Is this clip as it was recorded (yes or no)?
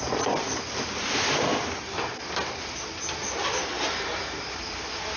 yes